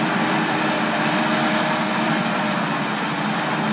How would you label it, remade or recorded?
recorded